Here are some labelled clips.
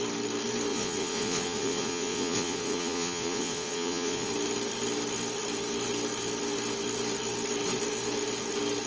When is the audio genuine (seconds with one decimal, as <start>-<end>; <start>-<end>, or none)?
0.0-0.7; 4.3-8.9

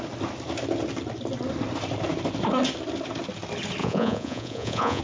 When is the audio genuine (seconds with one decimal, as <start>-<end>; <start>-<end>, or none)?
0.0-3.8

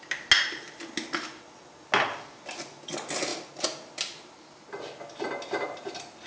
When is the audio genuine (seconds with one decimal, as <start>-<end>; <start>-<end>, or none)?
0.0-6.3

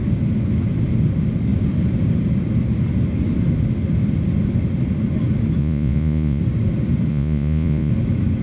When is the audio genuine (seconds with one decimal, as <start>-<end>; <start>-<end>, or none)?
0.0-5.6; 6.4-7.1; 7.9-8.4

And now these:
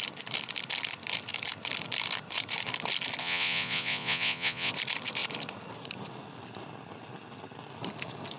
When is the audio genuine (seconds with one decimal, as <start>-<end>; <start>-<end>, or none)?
0.0-3.2; 4.7-8.4